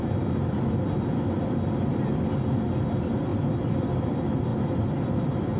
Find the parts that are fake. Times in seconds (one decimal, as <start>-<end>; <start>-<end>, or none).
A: 3.3-3.9; 4.5-5.6